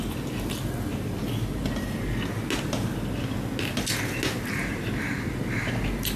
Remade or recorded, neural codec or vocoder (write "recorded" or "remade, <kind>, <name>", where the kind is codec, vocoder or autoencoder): recorded